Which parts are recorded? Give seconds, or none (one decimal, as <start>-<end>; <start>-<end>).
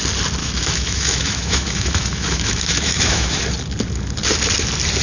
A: 0.0-0.4; 3.4-5.0